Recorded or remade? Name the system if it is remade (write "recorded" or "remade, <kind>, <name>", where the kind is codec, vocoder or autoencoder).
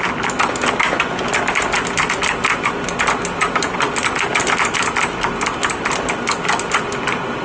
recorded